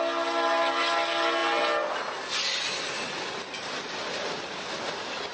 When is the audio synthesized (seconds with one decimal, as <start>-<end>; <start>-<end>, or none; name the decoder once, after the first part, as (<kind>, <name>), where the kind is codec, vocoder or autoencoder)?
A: none